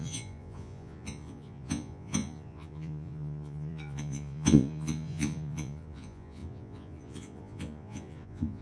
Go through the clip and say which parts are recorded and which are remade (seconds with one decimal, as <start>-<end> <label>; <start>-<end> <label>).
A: 0.0-8.6 remade